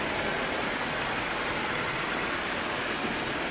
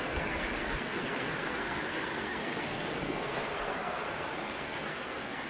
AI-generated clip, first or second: second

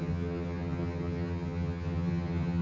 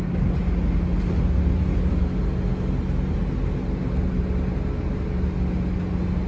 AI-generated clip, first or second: first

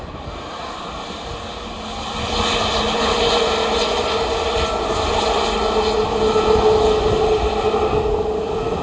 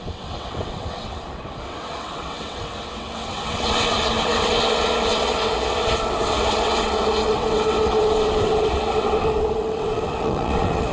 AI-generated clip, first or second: second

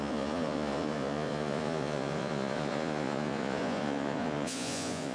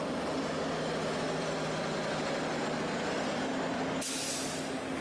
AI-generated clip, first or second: first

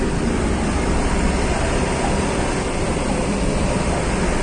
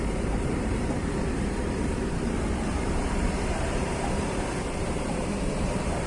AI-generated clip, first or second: second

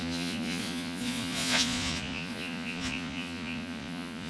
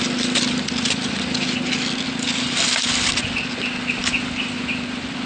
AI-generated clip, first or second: first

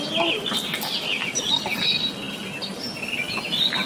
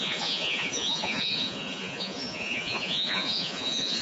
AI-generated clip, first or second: second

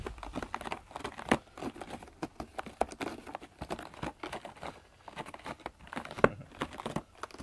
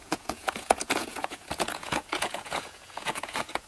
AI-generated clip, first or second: second